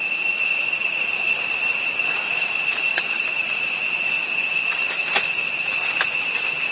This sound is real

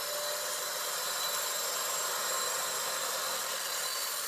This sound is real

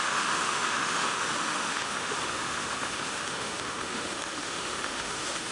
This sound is fake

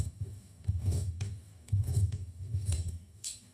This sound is fake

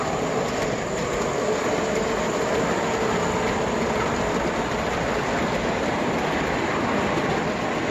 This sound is real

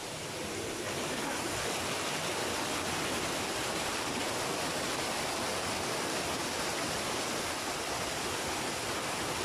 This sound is real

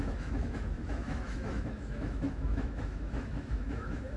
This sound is fake